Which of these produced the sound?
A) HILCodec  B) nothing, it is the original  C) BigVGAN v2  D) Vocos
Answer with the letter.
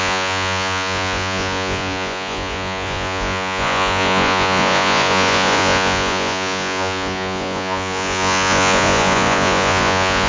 D